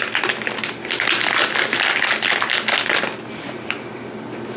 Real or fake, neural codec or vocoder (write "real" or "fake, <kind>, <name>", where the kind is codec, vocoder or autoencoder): real